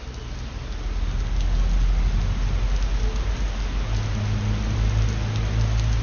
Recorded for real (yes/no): yes